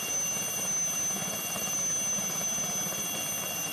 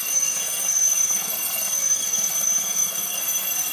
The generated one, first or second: second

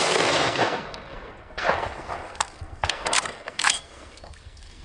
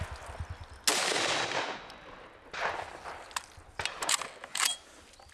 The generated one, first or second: first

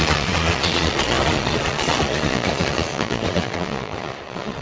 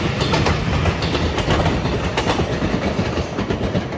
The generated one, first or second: first